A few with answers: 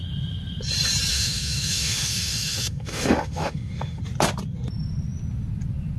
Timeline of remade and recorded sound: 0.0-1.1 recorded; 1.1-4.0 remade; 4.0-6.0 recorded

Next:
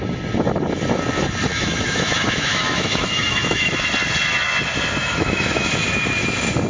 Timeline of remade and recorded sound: 0.0-1.5 recorded; 1.5-3.7 remade; 3.7-5.0 recorded; 5.0-5.7 remade; 5.7-6.7 recorded

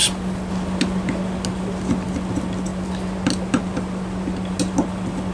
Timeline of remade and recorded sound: 0.0-5.3 recorded

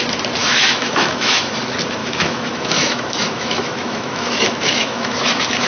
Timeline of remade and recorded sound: 0.0-0.4 recorded; 0.4-1.6 remade; 1.6-2.0 recorded; 2.0-5.7 remade

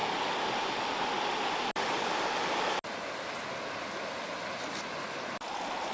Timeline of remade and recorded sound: 0.0-5.9 recorded

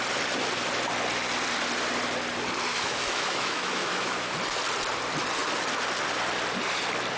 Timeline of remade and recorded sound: 0.0-2.7 recorded; 2.7-4.3 remade; 4.3-7.2 recorded